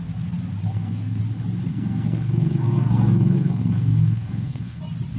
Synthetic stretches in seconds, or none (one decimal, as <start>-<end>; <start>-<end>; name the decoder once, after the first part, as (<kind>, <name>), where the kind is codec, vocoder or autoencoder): 0.7-1.2 (codec, SNAC); 1.7-4.8